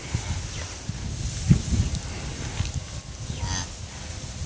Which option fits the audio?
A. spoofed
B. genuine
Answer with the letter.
B